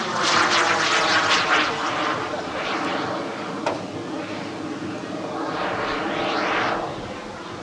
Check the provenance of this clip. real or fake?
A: real